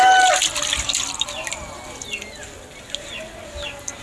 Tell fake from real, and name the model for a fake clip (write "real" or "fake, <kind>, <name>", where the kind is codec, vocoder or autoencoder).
real